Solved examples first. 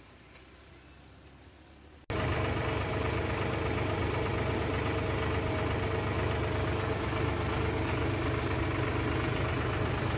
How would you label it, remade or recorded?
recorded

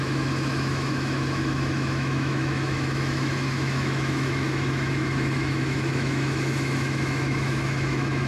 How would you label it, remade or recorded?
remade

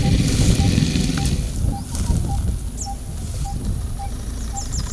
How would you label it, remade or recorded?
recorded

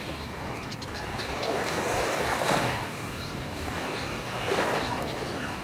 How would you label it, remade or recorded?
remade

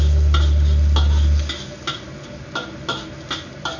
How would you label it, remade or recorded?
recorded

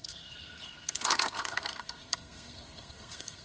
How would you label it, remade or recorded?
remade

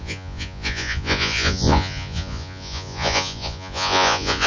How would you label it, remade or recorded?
remade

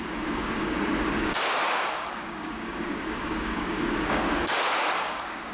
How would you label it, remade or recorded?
remade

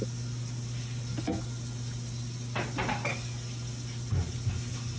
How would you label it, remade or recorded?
recorded